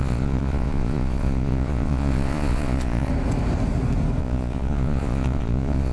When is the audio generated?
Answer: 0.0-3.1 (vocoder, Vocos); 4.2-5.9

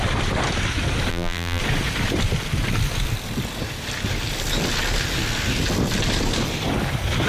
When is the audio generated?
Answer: 1.1-1.6 (vocoder, BigVGAN v2)

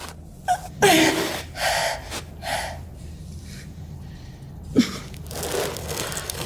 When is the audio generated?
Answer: 5.8-6.5 (codec, SNAC)

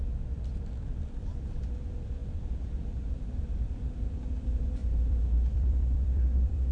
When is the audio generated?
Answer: 0.0-6.7 (vocoder, BigVGAN v2)

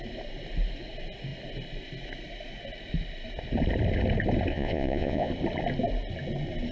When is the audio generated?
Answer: 4.5-5.3 (vocoder, Vocos)